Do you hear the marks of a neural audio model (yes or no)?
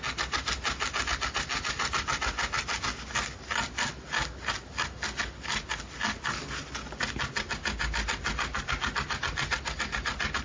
no